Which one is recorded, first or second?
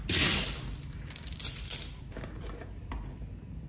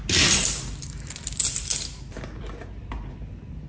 second